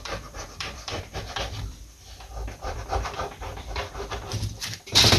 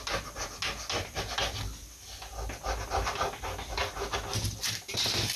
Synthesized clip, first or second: first